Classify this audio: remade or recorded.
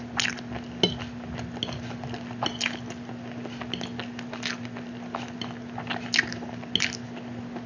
recorded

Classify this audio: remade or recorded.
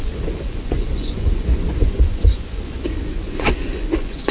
remade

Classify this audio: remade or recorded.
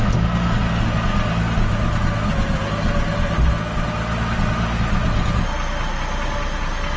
recorded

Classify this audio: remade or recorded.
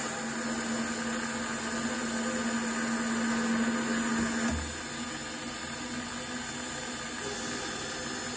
recorded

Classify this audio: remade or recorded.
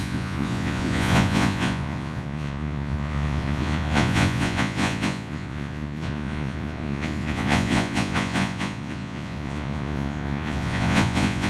remade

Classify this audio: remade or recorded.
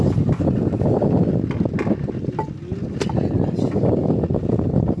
recorded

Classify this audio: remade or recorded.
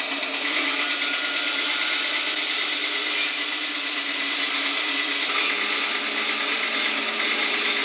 recorded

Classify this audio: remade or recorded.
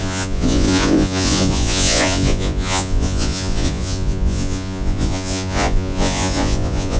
remade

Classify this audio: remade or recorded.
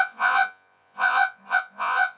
remade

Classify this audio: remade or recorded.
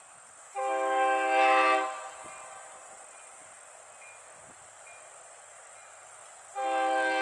recorded